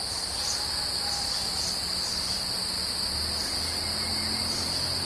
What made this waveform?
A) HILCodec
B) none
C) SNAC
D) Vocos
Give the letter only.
B